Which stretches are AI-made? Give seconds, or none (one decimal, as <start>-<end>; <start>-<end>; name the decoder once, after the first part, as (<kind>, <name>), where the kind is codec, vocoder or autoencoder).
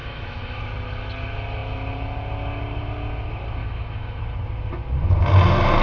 0.0-0.6 (autoencoder, DAC-VAE); 3.6-4.2